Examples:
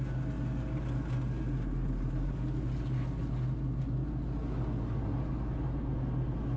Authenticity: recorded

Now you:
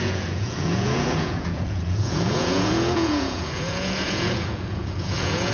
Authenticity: remade